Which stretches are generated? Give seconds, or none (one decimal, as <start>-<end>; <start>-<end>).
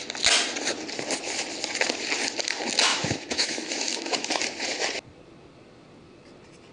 2.9-4.4